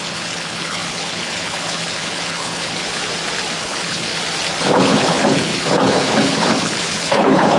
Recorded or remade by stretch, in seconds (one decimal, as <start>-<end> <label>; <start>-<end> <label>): 0.0-3.0 remade; 3.0-3.6 recorded; 3.6-4.1 remade; 4.1-4.6 recorded; 4.6-7.6 remade